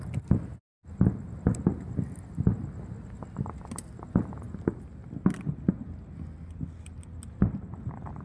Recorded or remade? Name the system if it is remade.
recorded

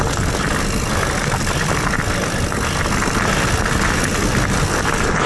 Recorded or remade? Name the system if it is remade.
recorded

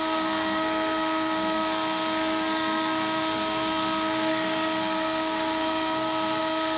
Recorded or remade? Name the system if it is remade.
remade, codec, SNAC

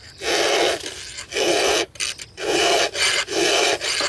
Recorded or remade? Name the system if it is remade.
recorded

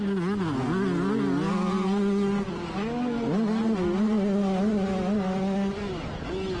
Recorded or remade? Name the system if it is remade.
recorded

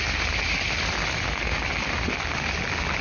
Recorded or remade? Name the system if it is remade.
recorded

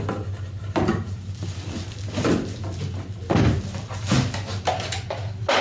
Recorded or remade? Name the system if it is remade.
recorded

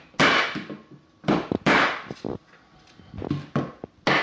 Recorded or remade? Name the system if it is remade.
recorded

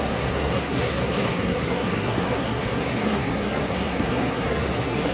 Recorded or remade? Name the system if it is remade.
remade, codec, SNAC